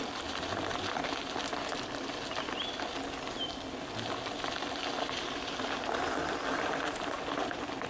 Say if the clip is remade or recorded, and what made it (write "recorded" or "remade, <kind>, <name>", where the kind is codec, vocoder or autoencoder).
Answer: recorded